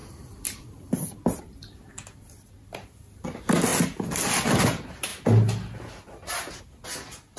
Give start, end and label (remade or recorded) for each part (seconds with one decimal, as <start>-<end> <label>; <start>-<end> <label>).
0.0-1.9 remade; 1.9-7.4 recorded